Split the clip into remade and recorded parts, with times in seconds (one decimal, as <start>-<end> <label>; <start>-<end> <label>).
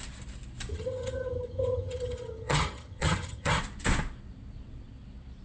0.0-0.7 recorded; 0.7-3.6 remade; 3.6-5.4 recorded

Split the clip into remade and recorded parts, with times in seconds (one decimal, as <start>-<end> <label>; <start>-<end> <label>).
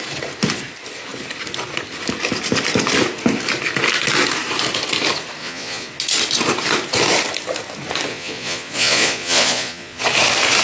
0.0-5.4 recorded; 5.4-5.9 remade; 5.9-8.1 recorded; 8.1-10.0 remade; 10.0-10.6 recorded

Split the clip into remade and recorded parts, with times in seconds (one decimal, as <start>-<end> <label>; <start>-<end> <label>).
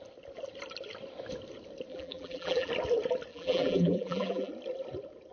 0.0-1.9 recorded; 1.9-2.7 remade; 2.7-3.3 recorded; 3.3-4.5 remade; 4.5-5.3 recorded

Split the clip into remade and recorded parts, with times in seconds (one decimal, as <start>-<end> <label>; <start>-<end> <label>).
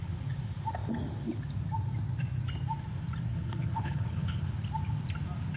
0.0-3.3 recorded; 3.3-4.4 remade; 4.4-5.6 recorded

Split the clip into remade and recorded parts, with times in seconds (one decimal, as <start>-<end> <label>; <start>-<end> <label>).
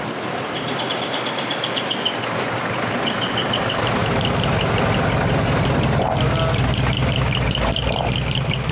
0.0-8.7 recorded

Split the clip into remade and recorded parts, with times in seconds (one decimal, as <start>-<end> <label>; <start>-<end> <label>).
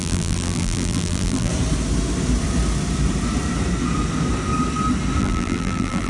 0.0-1.5 remade; 1.5-5.2 recorded; 5.2-6.1 remade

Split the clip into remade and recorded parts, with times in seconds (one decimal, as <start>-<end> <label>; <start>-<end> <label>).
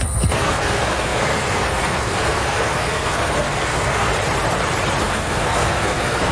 0.0-4.1 remade; 4.1-5.0 recorded; 5.0-6.3 remade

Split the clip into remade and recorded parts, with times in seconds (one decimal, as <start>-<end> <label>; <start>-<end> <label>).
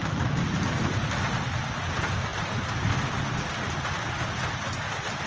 0.0-5.3 recorded